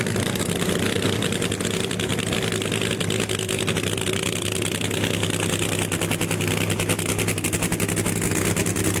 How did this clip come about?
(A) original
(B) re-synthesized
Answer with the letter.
A